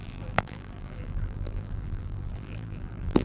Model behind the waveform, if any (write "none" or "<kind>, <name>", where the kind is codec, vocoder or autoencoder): vocoder, BigVGAN v2